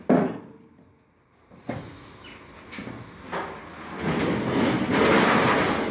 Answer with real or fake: real